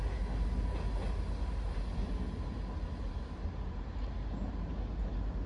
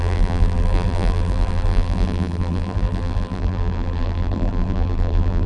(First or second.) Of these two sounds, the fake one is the second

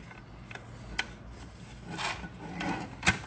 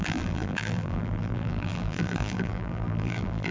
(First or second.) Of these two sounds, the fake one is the second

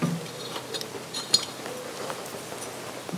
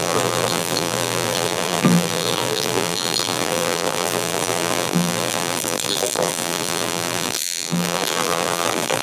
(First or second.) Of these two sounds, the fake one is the second